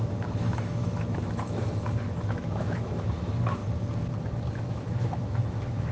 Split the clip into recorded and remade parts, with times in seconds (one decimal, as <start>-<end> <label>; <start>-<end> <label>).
0.0-3.6 remade; 3.6-4.5 recorded; 4.5-5.9 remade